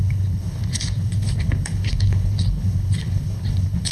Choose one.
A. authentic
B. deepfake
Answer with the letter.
B